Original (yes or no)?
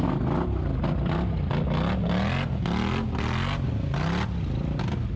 yes